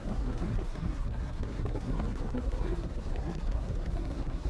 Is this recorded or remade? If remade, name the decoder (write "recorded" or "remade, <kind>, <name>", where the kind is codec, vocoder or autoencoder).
remade, codec, SNAC